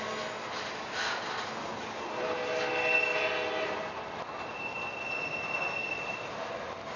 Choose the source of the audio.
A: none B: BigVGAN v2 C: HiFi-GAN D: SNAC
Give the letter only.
A